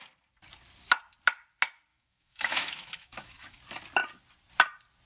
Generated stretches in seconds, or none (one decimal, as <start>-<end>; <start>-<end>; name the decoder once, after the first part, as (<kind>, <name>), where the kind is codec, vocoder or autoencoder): 1.9-3.6 (autoencoder, DAC-VAE)